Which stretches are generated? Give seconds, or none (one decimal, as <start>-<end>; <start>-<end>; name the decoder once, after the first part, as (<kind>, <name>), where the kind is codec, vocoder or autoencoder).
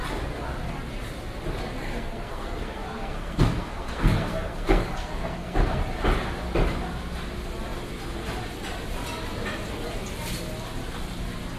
1.8-5.8 (codec, SNAC)